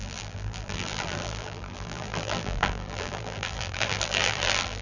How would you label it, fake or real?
fake